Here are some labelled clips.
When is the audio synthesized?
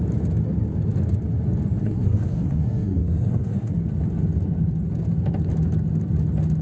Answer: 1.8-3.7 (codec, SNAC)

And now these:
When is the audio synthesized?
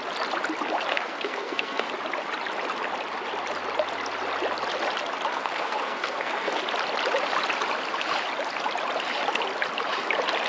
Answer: 0.9-1.9 (codec, SNAC); 5.3-6.6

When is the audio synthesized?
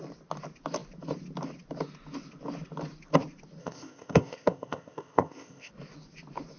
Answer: 3.6-5.7 (codec, ZipCodec)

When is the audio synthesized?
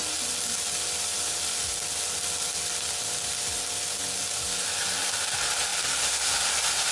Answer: none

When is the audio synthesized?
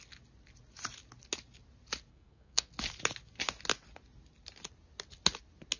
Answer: 2.1-2.7 (codec, SNAC)